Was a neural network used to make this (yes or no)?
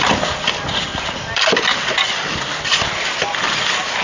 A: no